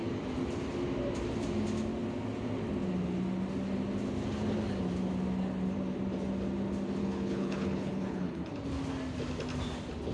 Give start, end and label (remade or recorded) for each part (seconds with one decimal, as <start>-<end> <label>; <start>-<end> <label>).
0.0-7.0 recorded; 7.0-8.5 remade; 8.5-10.1 recorded

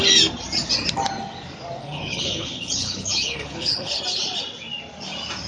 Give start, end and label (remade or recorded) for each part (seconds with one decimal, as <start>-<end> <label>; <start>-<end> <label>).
0.0-1.8 recorded; 1.8-4.0 remade; 4.0-5.5 recorded

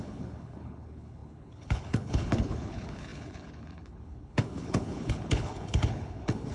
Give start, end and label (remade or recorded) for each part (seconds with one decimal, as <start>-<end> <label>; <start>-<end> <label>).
0.0-6.5 remade

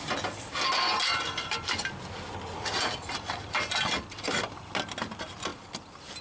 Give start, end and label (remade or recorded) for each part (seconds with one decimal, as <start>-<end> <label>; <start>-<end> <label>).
0.0-6.2 recorded

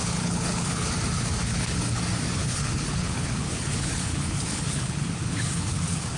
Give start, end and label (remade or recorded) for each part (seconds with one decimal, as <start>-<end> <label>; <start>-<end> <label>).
0.0-0.9 remade; 0.9-1.5 recorded; 1.5-2.0 remade; 2.0-2.4 recorded; 2.4-6.2 remade

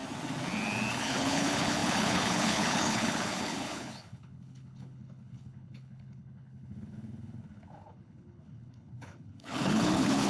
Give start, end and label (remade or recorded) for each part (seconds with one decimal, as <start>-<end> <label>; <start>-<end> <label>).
0.0-0.9 recorded; 0.9-10.3 remade

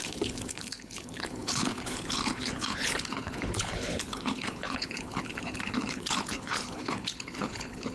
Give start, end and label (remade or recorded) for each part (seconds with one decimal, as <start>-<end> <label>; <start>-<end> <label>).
0.0-7.9 remade

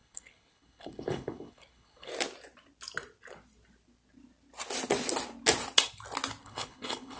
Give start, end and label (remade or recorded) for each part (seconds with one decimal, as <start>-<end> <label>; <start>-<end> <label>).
0.0-2.1 remade; 2.1-6.4 recorded; 6.4-7.2 remade